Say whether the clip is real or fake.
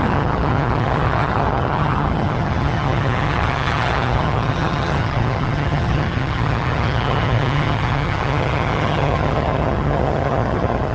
fake